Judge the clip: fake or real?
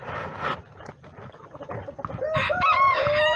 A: real